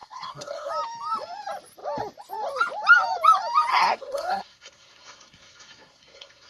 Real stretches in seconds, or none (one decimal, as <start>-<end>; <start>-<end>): 0.7-3.7